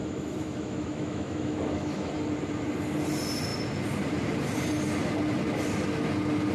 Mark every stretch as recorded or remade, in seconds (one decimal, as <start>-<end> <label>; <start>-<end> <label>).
0.0-2.1 remade; 2.1-6.5 recorded